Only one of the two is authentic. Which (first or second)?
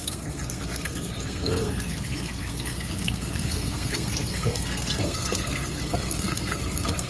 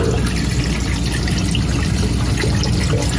second